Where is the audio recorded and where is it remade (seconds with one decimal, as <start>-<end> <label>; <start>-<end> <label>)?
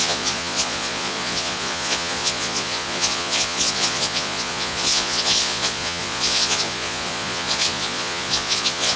0.0-9.0 remade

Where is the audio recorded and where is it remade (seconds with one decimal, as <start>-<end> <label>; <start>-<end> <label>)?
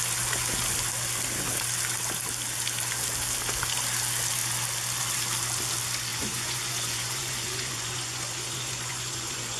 0.0-6.1 recorded; 6.1-9.6 remade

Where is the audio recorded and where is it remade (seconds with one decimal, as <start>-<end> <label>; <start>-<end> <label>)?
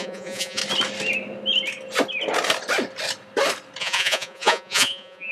0.0-0.6 remade; 0.6-3.8 recorded; 3.8-5.3 remade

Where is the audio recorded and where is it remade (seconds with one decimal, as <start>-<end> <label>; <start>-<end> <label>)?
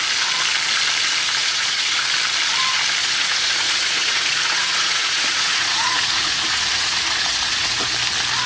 0.0-1.4 recorded; 1.4-2.0 remade; 2.0-3.0 recorded; 3.0-7.9 remade; 7.9-8.5 recorded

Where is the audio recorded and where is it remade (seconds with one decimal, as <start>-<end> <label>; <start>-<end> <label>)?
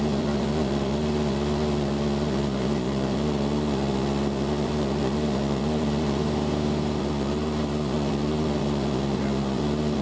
0.0-6.2 remade; 6.2-7.0 recorded; 7.0-10.0 remade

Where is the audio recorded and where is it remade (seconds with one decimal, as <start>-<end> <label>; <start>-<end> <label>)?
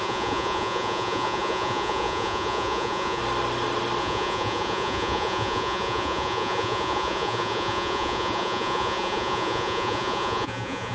0.0-3.2 remade; 3.2-4.0 recorded; 4.0-10.9 remade